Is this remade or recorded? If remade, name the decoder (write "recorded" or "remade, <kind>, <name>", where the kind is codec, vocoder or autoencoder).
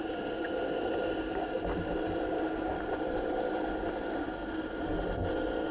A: recorded